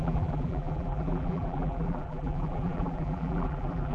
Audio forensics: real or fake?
fake